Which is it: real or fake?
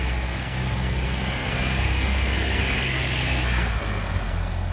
fake